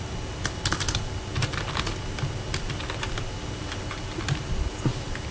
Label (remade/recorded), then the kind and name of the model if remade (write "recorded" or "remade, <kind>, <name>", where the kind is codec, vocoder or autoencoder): recorded